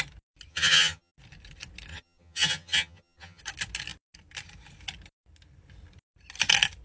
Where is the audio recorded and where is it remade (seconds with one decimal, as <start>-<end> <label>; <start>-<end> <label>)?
0.0-0.5 recorded; 0.5-1.1 remade; 1.1-1.9 recorded; 1.9-3.4 remade; 3.4-6.8 recorded